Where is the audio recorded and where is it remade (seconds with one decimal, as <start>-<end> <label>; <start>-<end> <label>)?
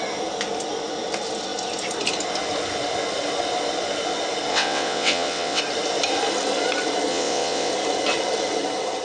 0.0-4.5 recorded; 4.5-5.6 remade; 5.6-7.1 recorded; 7.1-7.7 remade; 7.7-9.0 recorded